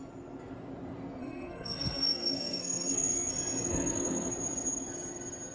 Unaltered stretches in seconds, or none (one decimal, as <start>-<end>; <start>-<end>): 0.0-1.2; 3.3-3.7; 4.3-5.5